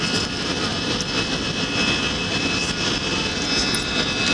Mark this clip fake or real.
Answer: real